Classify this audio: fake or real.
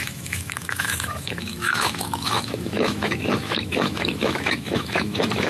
fake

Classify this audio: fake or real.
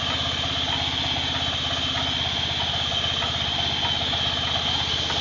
real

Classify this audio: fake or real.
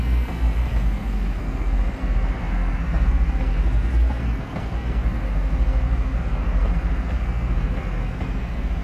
fake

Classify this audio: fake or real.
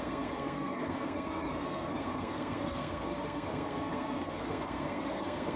fake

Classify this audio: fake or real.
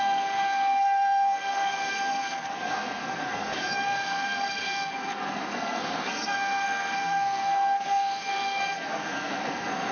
fake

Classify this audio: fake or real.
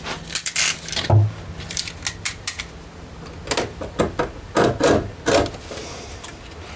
real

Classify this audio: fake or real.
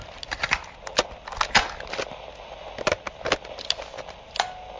real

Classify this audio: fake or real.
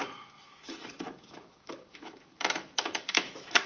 fake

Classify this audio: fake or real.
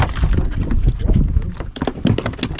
real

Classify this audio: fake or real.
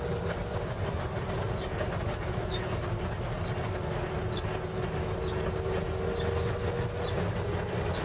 real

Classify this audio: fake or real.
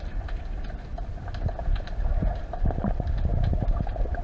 fake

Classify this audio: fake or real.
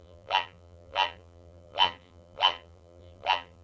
fake